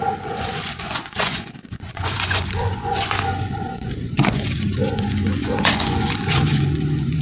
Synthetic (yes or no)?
yes